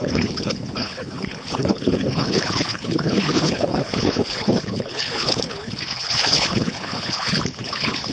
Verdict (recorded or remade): remade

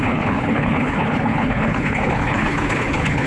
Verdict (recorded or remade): remade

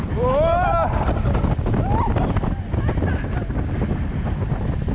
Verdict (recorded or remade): recorded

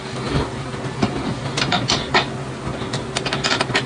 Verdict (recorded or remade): recorded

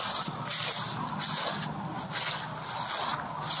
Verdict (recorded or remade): recorded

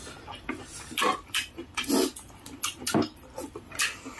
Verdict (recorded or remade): recorded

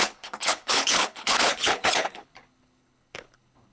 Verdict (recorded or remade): remade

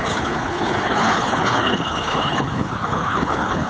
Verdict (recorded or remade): remade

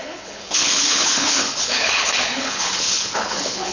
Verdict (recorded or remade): remade